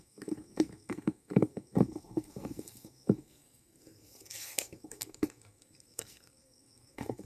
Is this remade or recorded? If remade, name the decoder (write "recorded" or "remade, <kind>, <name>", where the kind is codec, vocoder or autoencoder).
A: remade, codec, SNAC